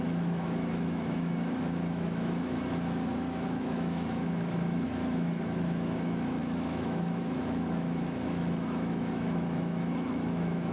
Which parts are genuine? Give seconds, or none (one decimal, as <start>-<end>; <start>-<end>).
none